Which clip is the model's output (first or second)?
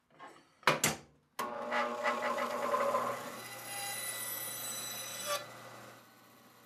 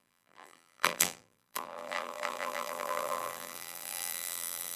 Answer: second